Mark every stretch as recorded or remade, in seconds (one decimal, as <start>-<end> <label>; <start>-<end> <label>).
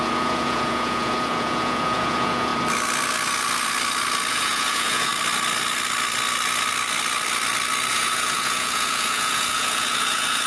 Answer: 0.0-2.5 remade; 2.5-4.3 recorded; 4.3-5.1 remade; 5.1-7.9 recorded; 7.9-10.5 remade